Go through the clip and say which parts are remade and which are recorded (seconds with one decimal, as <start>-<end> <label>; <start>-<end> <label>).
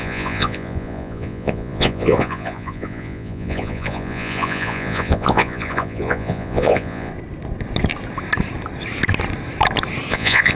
0.0-7.1 remade; 7.1-10.1 recorded; 10.1-10.6 remade